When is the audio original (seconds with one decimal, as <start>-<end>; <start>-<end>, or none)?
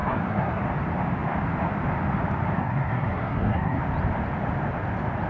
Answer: 0.6-2.6; 3.8-5.3